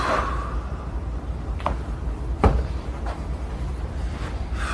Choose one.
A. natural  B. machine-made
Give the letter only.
B